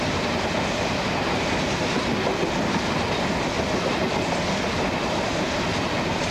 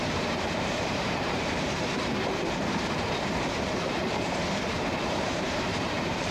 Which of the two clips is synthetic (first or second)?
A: second